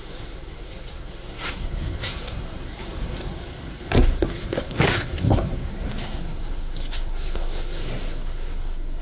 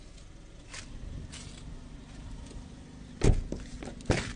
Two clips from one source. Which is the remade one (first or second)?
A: first